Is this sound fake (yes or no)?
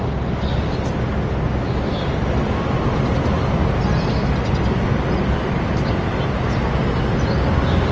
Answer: no